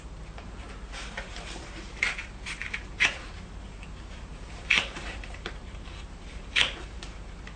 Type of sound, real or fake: fake